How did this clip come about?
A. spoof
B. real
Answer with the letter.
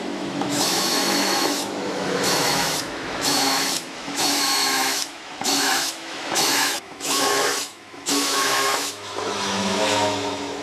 A